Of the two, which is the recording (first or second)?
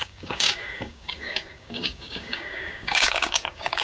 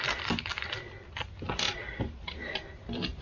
second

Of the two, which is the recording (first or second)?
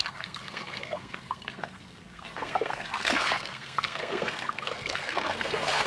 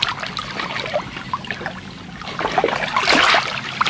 second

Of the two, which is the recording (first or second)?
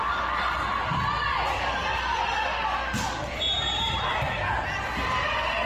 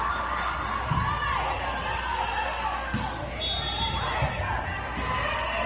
second